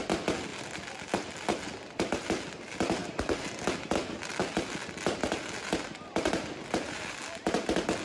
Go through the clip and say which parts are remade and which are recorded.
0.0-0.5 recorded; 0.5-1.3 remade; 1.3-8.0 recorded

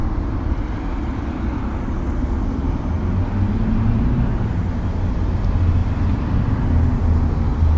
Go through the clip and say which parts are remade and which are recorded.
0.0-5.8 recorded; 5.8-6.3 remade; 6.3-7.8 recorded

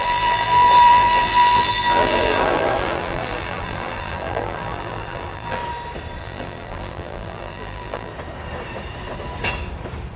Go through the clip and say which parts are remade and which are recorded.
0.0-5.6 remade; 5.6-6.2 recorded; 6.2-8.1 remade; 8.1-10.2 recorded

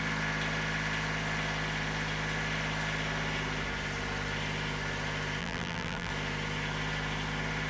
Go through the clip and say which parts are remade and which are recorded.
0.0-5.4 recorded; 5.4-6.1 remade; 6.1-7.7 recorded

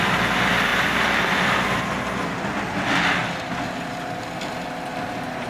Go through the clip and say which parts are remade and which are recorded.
0.0-0.7 recorded; 0.7-1.8 remade; 1.8-5.5 recorded

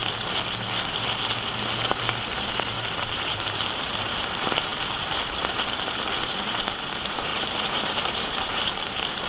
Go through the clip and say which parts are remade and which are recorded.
0.0-2.3 recorded; 2.3-9.3 remade

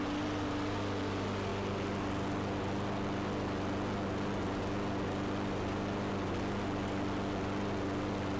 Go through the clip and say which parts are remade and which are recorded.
0.0-8.4 recorded

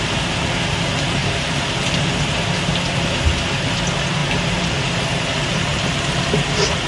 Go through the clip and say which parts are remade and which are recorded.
0.0-4.2 recorded; 4.2-5.9 remade; 5.9-6.9 recorded